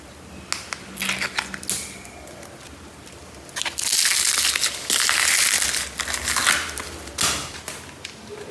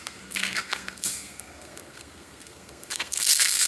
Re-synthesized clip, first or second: second